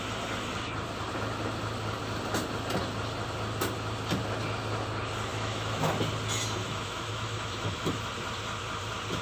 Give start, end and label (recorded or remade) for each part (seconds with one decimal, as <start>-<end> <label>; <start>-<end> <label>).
0.0-5.3 recorded; 5.3-5.9 remade; 5.9-6.6 recorded; 6.6-8.1 remade; 8.1-9.2 recorded